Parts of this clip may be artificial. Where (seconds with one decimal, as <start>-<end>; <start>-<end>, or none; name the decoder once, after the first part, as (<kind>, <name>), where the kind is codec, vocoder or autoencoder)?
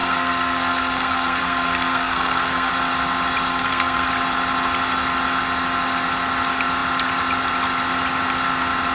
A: 0.0-2.7 (codec, SNAC); 3.5-4.1